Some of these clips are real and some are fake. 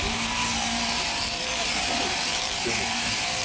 fake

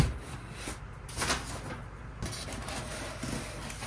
real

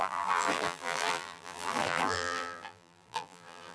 fake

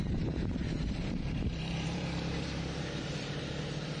fake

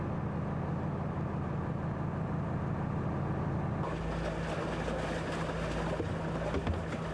real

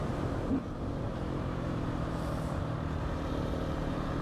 fake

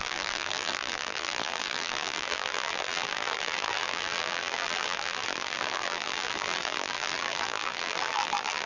fake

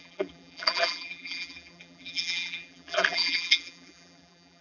fake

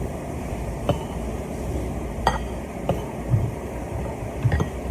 fake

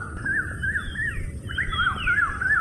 fake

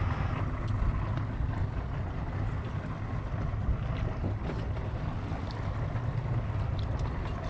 real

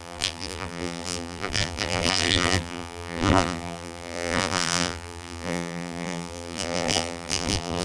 fake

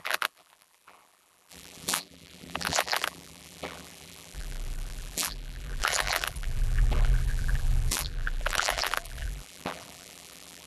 fake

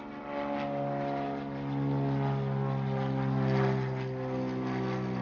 real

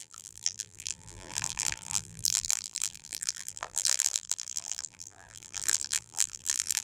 fake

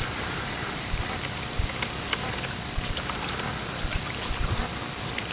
fake